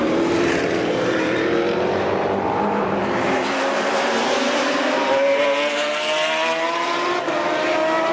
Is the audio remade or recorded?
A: remade